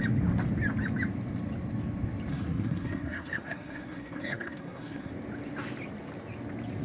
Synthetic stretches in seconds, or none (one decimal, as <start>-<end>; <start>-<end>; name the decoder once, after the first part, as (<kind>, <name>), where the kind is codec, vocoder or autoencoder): 2.3-5.1 (codec, SNAC)